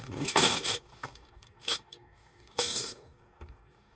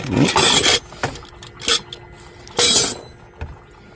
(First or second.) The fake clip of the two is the first